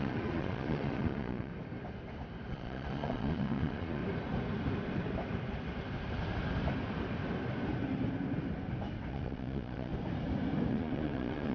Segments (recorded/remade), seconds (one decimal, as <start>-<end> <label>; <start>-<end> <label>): 0.0-1.5 remade; 1.5-2.5 recorded; 2.5-4.0 remade; 4.0-9.1 recorded; 9.1-9.9 remade; 9.9-10.7 recorded; 10.7-11.5 remade